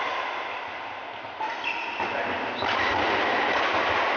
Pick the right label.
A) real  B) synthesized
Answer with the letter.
A